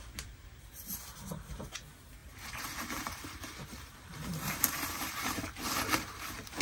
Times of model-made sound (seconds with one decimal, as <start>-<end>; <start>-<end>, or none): 2.2-6.6